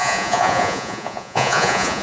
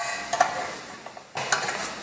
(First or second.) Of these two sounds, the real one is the second